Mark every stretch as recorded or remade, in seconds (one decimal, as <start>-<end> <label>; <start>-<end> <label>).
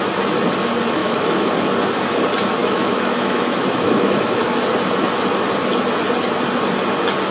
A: 0.0-1.0 recorded; 1.0-1.5 remade; 1.5-2.6 recorded; 2.6-4.5 remade; 4.5-7.3 recorded